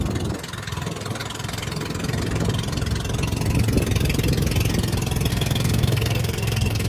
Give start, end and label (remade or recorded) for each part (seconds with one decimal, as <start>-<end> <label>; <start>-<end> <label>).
0.0-5.3 recorded; 5.3-6.9 remade